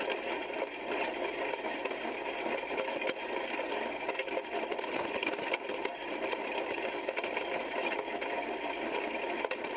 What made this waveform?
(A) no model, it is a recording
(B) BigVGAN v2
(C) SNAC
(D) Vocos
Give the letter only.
A